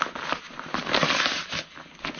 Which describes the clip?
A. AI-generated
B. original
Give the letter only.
B